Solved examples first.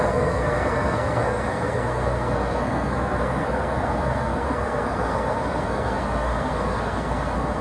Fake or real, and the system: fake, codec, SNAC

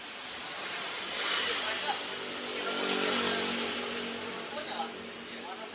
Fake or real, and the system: real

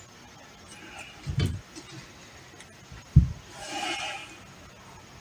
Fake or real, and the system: real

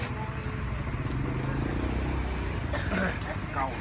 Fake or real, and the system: real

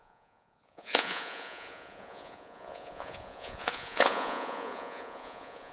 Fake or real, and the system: fake, vocoder, Vocos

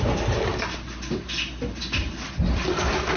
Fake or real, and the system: real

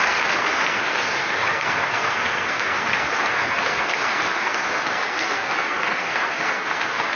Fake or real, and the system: fake, codec, SNAC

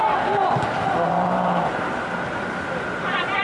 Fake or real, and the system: real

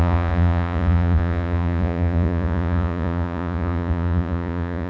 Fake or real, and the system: fake, vocoder, Vocos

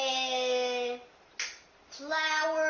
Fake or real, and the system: real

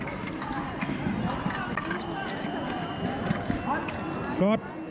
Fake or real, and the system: real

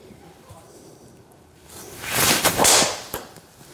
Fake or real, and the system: fake, vocoder, BigVGAN v2